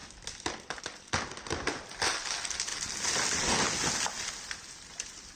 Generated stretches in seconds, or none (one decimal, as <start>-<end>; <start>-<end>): none